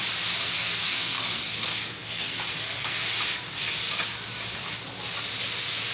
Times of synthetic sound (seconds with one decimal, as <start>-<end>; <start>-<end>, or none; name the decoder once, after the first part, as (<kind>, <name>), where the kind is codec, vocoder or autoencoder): 0.4-3.0 (codec, SNAC)